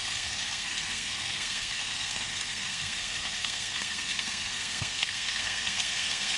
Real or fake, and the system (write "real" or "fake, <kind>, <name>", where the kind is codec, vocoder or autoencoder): fake, codec, SNAC